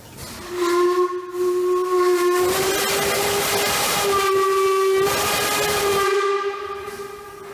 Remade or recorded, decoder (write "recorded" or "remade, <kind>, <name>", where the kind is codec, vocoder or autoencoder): recorded